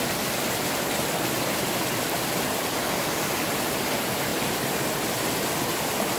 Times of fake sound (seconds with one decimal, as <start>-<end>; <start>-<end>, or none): 4.3-4.9